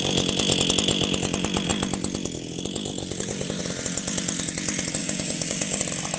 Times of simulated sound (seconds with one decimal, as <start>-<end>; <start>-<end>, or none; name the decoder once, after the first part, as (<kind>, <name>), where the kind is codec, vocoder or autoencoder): 5.0-5.8 (codec, DAC)